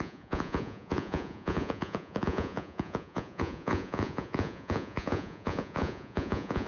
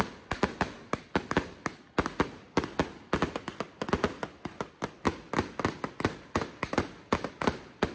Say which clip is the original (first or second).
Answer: second